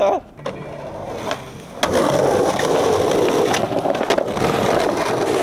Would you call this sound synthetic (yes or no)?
no